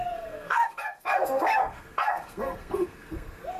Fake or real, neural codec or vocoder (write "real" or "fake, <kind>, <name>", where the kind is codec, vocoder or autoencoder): fake, codec, SNAC